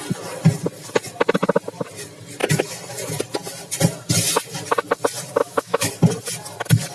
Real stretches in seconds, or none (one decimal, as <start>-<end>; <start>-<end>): 0.0-5.4; 5.9-6.9

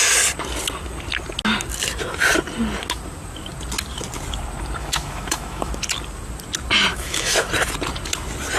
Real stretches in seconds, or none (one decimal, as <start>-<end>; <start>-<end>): 0.0-4.8; 5.7-6.9; 7.5-8.6